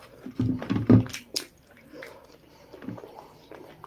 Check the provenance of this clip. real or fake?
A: real